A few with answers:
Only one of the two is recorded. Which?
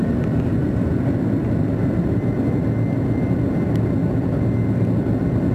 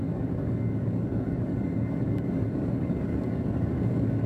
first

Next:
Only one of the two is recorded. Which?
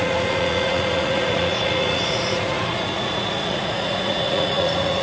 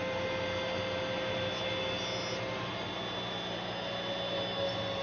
second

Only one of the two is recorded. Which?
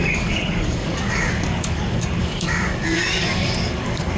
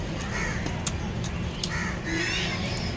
second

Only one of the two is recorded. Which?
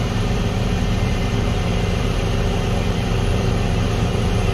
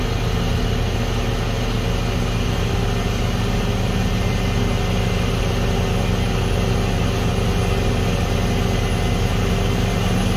second